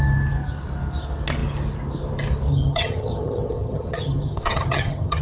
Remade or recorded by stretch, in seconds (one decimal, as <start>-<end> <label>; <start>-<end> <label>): 0.0-2.5 recorded; 2.5-5.2 remade